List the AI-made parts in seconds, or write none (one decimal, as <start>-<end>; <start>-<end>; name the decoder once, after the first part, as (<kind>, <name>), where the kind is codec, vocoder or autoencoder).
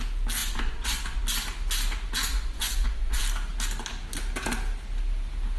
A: 0.4-1.2 (vocoder, Vocos); 2.3-3.2